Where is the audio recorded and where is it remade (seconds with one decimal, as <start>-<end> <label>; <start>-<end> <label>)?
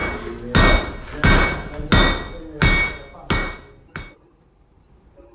0.0-5.3 recorded